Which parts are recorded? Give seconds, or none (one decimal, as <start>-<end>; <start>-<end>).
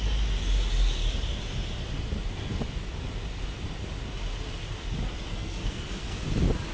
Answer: 0.0-5.3; 6.2-6.7